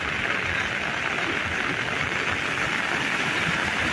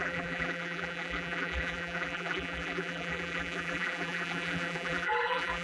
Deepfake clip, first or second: second